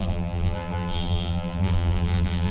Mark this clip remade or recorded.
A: remade